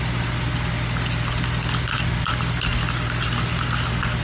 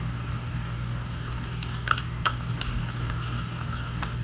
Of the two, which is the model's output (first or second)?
second